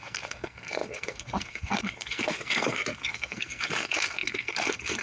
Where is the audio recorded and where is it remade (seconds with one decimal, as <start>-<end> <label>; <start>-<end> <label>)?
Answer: 0.0-5.0 remade